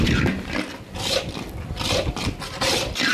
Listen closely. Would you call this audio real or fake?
fake